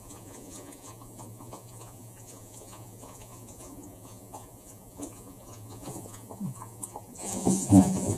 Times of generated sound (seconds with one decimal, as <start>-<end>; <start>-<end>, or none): 0.0-8.2